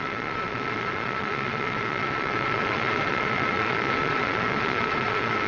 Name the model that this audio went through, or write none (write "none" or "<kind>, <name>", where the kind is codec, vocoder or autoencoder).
vocoder, Vocos